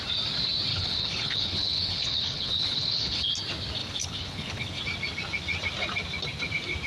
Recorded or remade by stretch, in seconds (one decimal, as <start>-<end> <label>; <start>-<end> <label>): 0.0-0.7 recorded; 0.7-3.3 remade; 3.3-3.8 recorded; 3.8-4.8 remade; 4.8-6.9 recorded